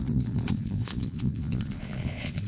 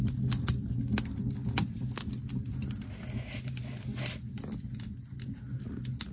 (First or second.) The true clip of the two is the second